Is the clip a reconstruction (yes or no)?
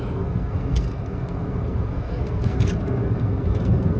yes